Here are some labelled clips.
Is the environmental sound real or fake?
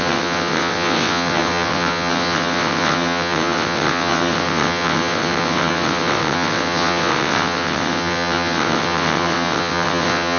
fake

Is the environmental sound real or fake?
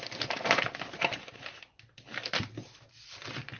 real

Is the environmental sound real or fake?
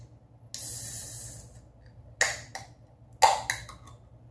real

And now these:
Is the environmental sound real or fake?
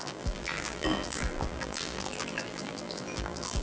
fake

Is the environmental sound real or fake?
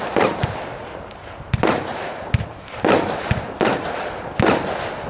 real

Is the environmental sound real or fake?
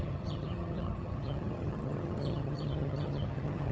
fake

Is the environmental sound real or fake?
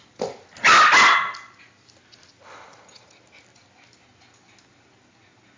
real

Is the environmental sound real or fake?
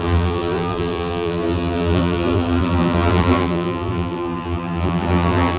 fake